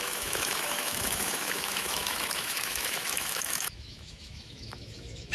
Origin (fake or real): fake